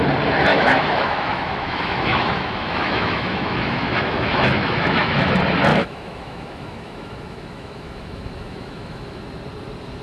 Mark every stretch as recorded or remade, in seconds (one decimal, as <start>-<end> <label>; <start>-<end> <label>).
0.0-0.5 recorded; 0.5-5.3 remade; 5.3-5.7 recorded; 5.7-9.2 remade; 9.2-10.0 recorded